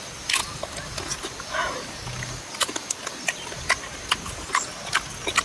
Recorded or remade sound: recorded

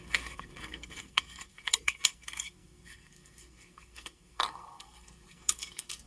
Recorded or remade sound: remade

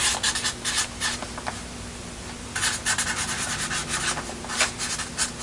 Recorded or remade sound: recorded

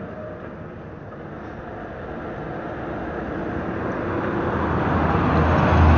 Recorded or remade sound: recorded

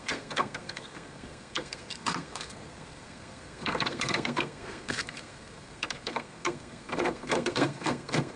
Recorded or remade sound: remade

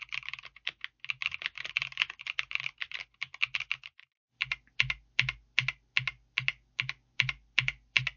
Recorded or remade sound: recorded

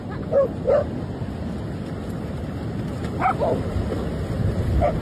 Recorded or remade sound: recorded